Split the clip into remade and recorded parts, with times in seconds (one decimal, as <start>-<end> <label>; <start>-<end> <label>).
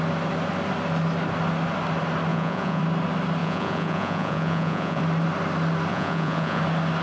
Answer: 0.0-2.3 recorded; 2.3-2.8 remade; 2.8-3.4 recorded; 3.4-5.0 remade; 5.0-5.9 recorded; 5.9-6.6 remade; 6.6-7.0 recorded